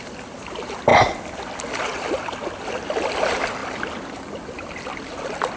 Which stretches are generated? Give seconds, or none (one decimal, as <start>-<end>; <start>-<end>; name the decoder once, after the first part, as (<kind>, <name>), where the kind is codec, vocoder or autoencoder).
none